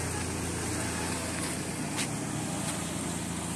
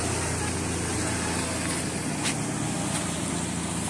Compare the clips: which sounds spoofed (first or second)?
second